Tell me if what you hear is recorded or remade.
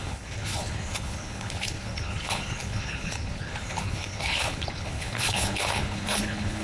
remade